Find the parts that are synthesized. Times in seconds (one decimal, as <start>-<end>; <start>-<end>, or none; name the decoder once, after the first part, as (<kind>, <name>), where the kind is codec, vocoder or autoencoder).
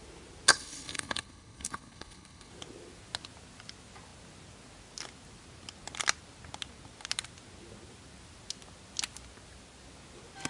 0.5-2.5 (codec, HILCodec)